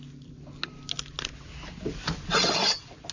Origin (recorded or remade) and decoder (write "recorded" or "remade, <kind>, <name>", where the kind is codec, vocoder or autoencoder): recorded